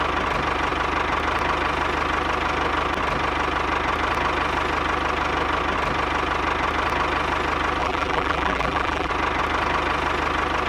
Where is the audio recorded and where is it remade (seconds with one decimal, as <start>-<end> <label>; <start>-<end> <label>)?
0.0-7.8 recorded; 7.8-9.1 remade; 9.1-10.7 recorded